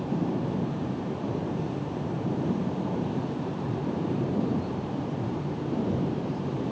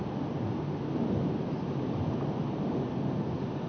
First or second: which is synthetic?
first